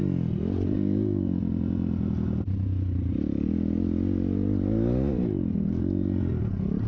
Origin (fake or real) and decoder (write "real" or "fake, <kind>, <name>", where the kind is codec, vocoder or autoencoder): real